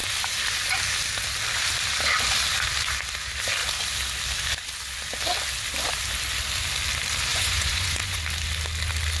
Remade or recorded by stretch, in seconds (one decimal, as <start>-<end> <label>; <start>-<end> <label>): 0.0-7.3 recorded; 7.3-8.2 remade; 8.2-9.2 recorded